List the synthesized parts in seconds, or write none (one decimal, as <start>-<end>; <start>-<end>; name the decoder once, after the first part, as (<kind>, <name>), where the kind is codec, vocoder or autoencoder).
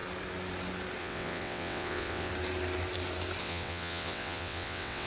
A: 1.0-2.3 (vocoder, WaveNeXt); 3.4-5.1